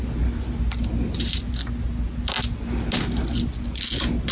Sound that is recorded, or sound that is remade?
recorded